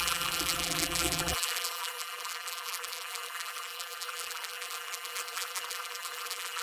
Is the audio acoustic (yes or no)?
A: no